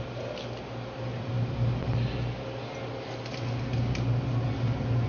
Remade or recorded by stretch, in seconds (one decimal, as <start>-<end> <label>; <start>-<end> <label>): 0.0-5.1 recorded